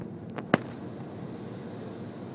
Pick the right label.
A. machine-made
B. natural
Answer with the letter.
B